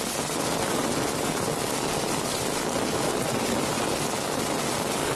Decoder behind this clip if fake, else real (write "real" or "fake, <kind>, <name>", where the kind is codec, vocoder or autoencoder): real